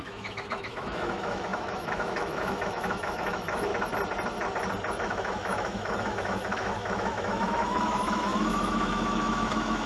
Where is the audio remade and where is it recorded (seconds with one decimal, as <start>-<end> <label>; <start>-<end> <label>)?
0.0-3.7 remade; 3.7-5.0 recorded; 5.0-9.9 remade

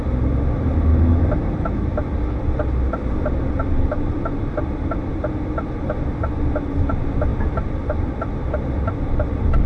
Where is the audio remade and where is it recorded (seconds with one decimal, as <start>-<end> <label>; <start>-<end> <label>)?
0.0-0.9 recorded; 0.9-2.3 remade; 2.3-9.7 recorded

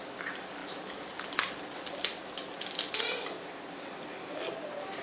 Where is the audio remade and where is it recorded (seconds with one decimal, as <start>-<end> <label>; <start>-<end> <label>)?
0.0-5.0 recorded

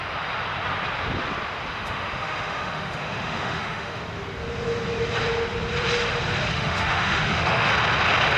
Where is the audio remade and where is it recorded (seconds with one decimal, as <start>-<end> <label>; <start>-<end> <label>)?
0.0-1.7 recorded; 1.7-4.0 remade; 4.0-6.5 recorded; 6.5-7.7 remade; 7.7-8.4 recorded

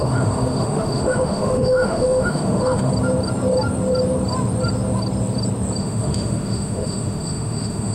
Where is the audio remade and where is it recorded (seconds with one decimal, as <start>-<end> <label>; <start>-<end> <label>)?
0.0-2.9 remade; 2.9-5.8 recorded; 5.8-7.9 remade

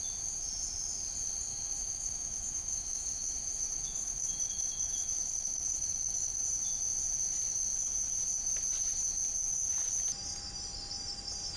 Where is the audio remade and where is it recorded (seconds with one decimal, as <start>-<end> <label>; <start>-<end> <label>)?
0.0-1.5 recorded; 1.5-6.4 remade; 6.4-11.6 recorded

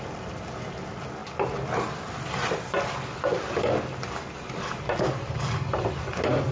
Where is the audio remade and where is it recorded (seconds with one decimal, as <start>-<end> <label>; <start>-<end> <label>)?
0.0-6.5 recorded